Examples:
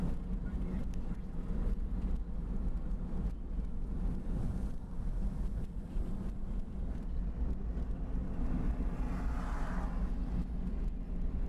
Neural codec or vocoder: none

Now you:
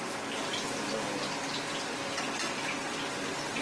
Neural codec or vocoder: none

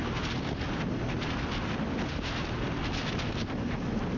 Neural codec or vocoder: none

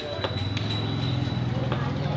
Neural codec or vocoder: none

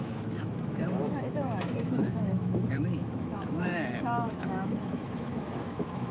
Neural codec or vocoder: autoencoder, DAC-VAE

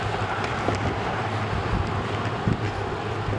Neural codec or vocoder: none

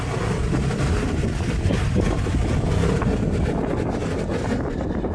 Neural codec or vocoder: none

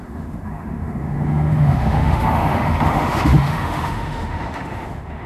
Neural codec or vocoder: autoencoder, DAC-VAE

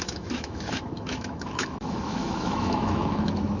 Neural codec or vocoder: autoencoder, DAC-VAE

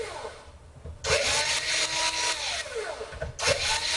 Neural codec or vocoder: none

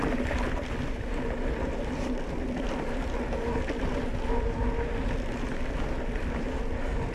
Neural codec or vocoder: none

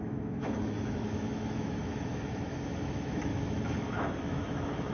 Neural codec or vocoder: autoencoder, DAC-VAE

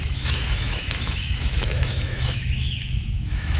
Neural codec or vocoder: autoencoder, DAC-VAE